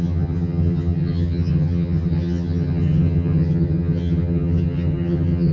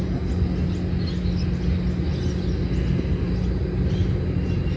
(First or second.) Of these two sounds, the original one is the second